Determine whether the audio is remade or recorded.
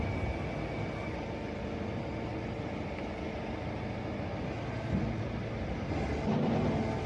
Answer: recorded